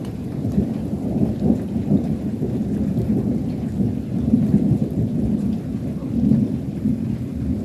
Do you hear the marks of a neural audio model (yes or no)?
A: yes